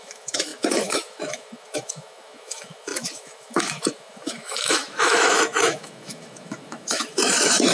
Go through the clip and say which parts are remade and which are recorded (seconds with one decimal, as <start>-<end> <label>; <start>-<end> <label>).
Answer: 0.0-7.7 remade